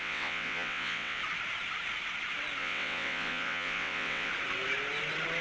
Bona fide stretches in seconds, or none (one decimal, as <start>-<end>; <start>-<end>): 1.2-2.6; 4.3-5.4